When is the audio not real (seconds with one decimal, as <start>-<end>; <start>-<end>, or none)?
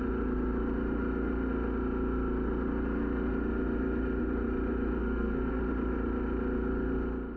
5.0-5.6